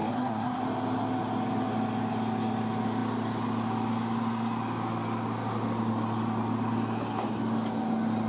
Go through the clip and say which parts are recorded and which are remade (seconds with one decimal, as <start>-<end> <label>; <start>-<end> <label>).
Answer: 0.0-0.6 remade; 0.6-8.3 recorded